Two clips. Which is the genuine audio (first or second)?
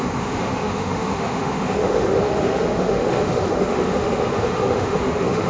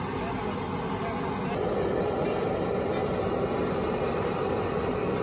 second